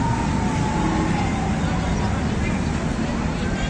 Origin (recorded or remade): recorded